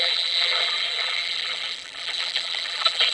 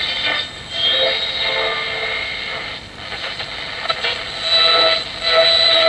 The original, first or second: second